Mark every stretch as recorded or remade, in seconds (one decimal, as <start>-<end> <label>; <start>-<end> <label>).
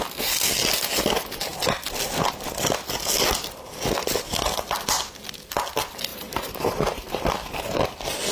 0.0-6.1 recorded; 6.1-7.2 remade; 7.2-8.3 recorded